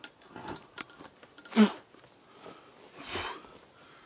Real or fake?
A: real